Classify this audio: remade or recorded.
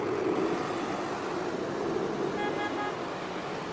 recorded